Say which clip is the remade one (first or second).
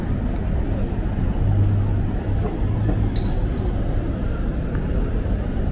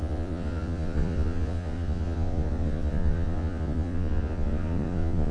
second